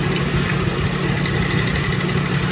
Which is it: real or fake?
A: real